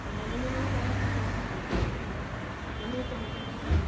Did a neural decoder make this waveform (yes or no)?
no